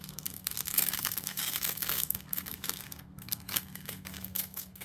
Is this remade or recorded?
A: remade